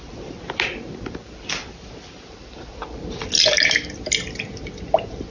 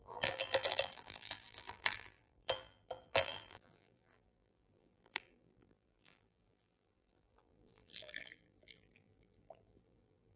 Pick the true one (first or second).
first